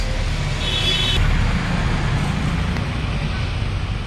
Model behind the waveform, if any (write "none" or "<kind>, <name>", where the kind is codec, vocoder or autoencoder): none